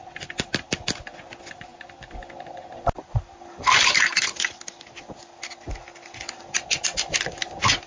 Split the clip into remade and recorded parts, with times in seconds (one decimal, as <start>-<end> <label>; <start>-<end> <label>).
0.0-7.9 recorded

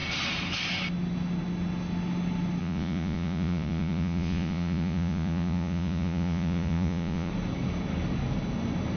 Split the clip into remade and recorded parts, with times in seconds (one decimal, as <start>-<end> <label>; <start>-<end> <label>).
0.0-2.6 recorded; 2.6-7.3 remade; 7.3-9.0 recorded